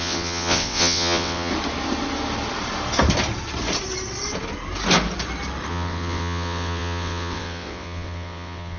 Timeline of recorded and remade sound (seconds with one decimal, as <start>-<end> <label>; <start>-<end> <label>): 0.0-1.5 remade; 1.5-5.7 recorded; 5.7-8.8 remade

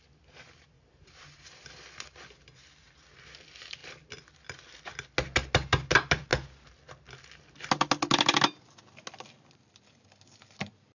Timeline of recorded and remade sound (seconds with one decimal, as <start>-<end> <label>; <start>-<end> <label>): 0.0-11.0 recorded

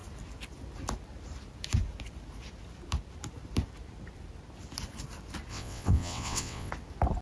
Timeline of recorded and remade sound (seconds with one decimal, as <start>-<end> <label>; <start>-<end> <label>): 0.0-5.5 recorded; 5.5-6.7 remade; 6.7-7.2 recorded

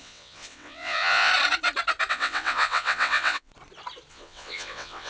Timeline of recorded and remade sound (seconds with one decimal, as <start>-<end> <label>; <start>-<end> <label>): 0.0-1.3 remade; 1.3-2.1 recorded; 2.1-3.5 remade; 3.5-4.1 recorded; 4.1-5.1 remade

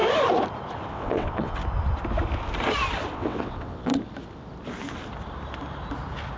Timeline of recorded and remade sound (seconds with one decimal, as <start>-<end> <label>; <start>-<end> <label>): 0.0-0.9 recorded; 0.9-1.6 remade; 1.6-3.1 recorded; 3.1-3.9 remade; 3.9-6.4 recorded

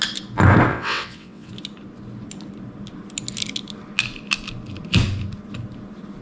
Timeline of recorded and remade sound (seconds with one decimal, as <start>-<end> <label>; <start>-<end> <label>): 0.0-0.7 recorded; 0.7-1.5 remade; 1.5-6.2 recorded

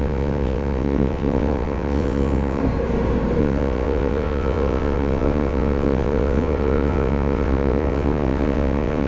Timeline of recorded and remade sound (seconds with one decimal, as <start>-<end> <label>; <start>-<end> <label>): 0.0-2.6 remade; 2.6-3.4 recorded; 3.4-9.1 remade